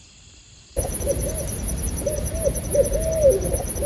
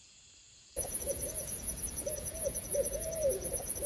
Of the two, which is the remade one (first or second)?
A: second